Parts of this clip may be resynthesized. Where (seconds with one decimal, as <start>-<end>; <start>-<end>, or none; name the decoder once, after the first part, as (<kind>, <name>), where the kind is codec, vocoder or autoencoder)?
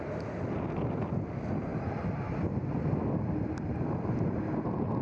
none